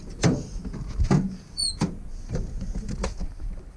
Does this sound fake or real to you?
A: real